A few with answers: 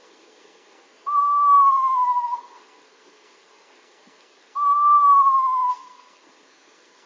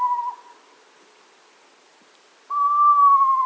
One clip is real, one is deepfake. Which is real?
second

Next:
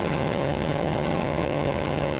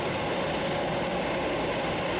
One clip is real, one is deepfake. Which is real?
second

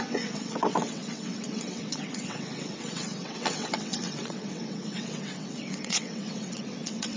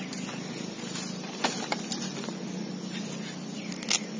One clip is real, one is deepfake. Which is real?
second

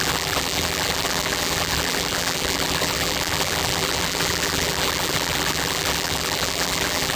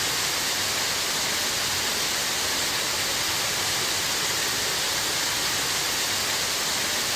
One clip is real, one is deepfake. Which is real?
second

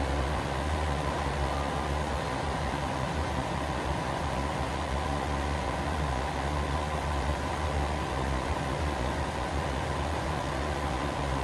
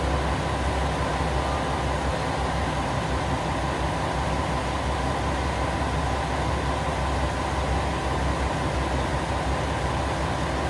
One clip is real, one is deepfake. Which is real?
second